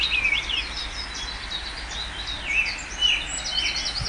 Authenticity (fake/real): real